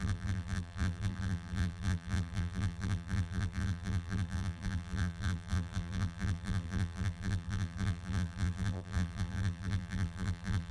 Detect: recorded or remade remade